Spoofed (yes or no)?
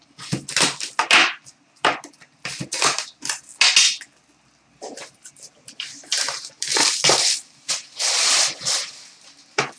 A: no